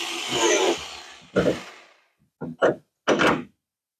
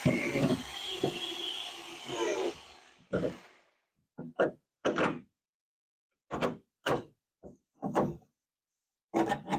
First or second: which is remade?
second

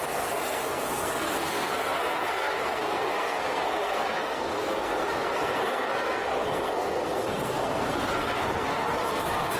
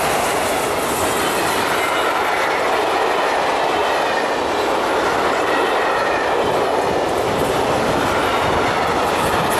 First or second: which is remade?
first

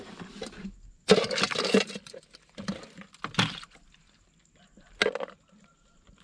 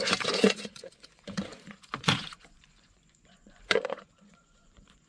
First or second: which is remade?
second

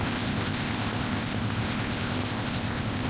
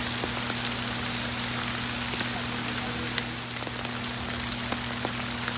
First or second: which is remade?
first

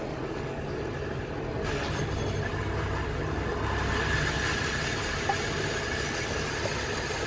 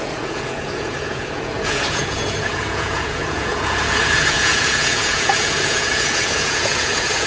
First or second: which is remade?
second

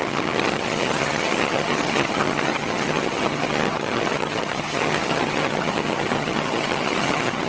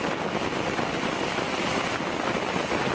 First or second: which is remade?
first